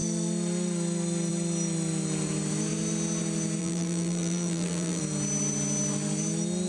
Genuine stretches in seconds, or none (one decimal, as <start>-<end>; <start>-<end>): 0.0-3.6; 5.0-6.7